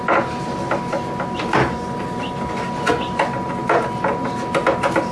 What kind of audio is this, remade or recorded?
recorded